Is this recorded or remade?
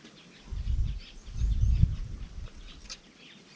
recorded